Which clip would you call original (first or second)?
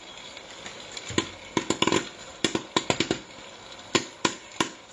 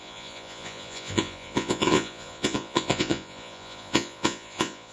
first